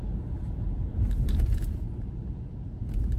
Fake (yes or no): yes